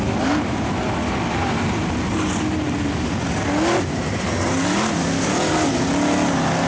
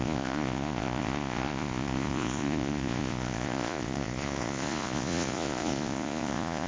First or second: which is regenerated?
second